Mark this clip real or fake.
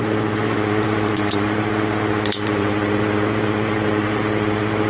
fake